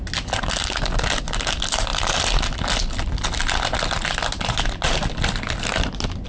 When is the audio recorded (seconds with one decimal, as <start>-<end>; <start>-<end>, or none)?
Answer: 0.0-6.3